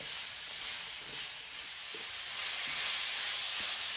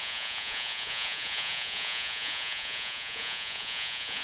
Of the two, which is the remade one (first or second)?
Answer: second